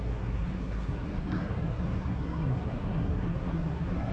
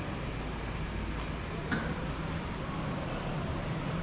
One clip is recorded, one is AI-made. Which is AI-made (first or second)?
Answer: first